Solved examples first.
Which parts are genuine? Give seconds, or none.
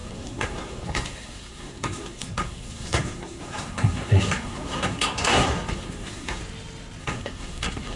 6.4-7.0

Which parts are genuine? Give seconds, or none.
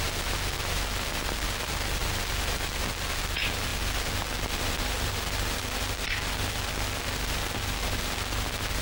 0.0-8.8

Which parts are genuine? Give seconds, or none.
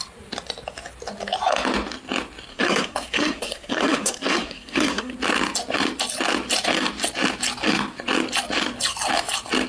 0.0-2.5; 5.1-9.7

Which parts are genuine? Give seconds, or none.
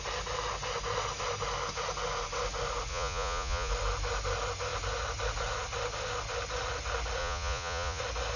0.0-2.9; 3.7-7.2; 8.0-8.4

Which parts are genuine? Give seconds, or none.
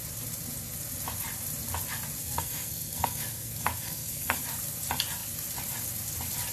0.0-2.2; 4.4-6.5